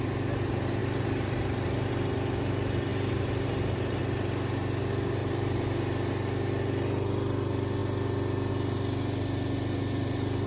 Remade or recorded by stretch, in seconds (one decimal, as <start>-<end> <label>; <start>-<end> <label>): 0.0-0.8 recorded; 0.8-1.9 remade; 1.9-2.9 recorded; 2.9-4.0 remade; 4.0-5.2 recorded; 5.2-5.7 remade; 5.7-10.5 recorded